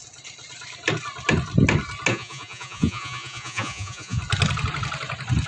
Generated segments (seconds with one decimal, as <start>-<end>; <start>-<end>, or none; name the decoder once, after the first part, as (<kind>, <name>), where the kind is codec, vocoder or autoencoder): 2.1-4.2 (vocoder, Vocos)